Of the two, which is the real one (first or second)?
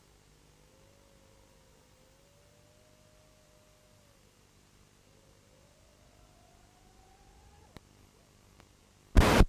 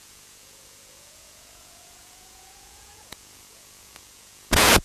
first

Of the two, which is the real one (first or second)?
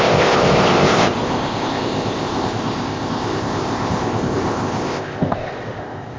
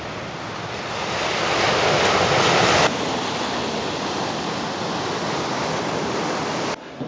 second